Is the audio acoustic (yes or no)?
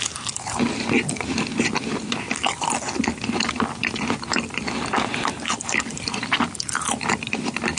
no